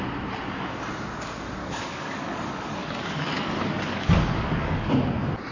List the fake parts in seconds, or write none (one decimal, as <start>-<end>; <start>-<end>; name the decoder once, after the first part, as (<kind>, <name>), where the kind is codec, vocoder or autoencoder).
1.6-4.9 (codec, DAC)